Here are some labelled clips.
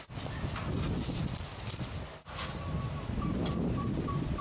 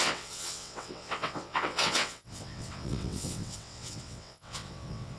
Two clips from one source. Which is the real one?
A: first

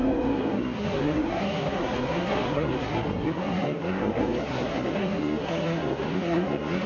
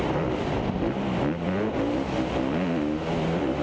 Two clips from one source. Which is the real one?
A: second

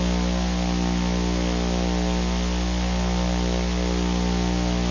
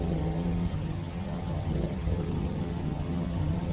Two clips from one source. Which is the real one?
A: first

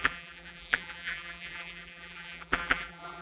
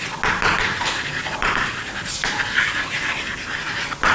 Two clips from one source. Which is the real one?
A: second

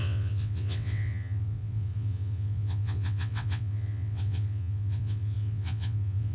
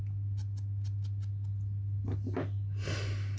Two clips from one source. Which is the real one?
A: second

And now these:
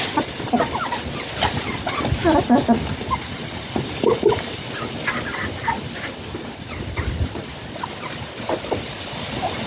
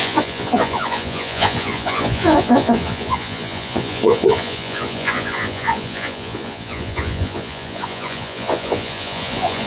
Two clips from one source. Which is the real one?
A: first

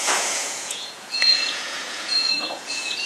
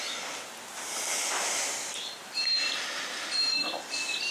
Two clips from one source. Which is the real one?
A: second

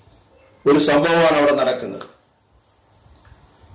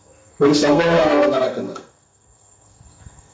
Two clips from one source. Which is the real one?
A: first